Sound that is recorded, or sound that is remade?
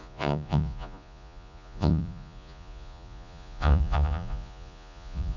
remade